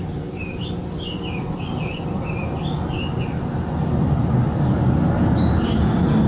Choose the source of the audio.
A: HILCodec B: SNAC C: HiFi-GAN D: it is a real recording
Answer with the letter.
D